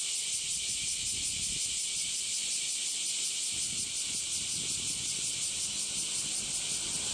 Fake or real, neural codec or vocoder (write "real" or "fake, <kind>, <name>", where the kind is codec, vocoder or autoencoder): real